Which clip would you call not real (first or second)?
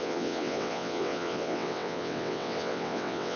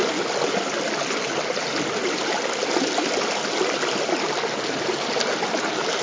first